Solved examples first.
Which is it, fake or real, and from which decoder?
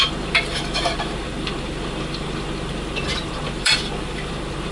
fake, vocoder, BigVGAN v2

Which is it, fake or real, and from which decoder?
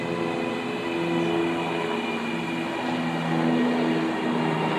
real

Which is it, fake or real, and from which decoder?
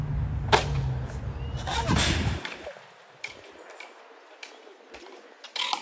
real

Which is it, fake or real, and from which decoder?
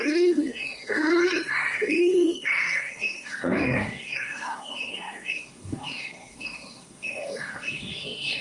fake, codec, SNAC